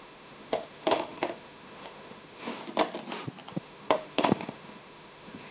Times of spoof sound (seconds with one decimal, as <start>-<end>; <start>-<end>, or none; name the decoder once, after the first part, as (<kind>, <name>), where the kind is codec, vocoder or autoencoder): 0.0-2.5 (autoencoder, DAC-VAE); 3.5-5.5